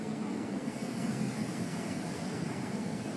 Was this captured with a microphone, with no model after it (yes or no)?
no